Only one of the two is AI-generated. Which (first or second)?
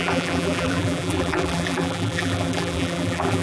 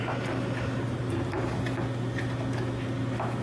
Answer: first